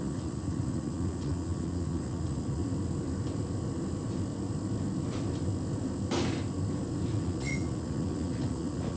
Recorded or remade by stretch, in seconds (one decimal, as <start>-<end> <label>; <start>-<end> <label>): 0.0-2.6 remade; 2.6-7.1 recorded; 7.1-9.0 remade